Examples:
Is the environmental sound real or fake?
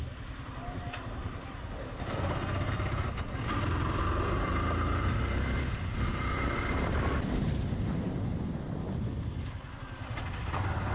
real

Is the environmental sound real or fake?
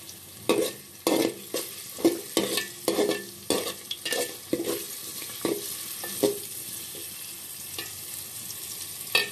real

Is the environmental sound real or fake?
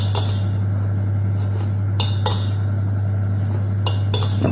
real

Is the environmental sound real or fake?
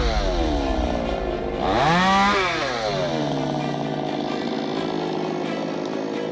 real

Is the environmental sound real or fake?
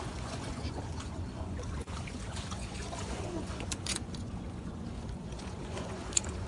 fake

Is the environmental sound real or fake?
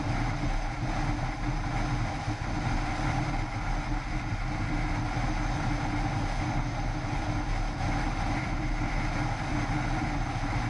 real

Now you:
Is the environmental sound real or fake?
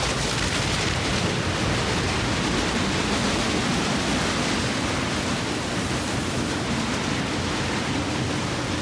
real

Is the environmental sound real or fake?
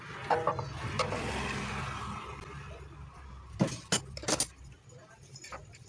real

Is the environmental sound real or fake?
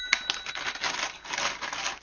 real